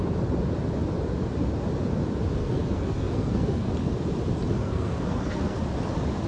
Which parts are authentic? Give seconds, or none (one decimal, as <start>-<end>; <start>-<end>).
0.0-2.4; 3.7-4.6; 5.6-6.3